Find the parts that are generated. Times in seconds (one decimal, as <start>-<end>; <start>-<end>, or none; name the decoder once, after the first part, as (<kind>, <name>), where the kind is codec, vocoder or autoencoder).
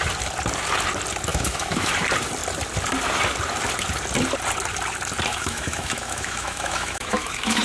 1.3-1.9 (autoencoder, DAC-VAE); 5.3-7.6